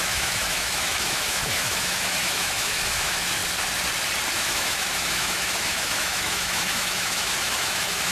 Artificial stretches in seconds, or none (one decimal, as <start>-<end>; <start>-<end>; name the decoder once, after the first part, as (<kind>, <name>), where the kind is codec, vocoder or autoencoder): 0.0-3.4 (autoencoder, DAC-VAE); 4.3-8.1